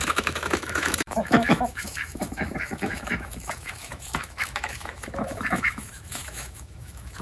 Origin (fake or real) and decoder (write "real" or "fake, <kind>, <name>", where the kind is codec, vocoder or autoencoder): fake, autoencoder, DAC-VAE